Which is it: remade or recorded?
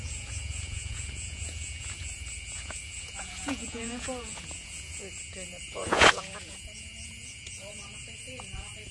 remade